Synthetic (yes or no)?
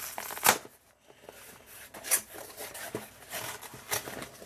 no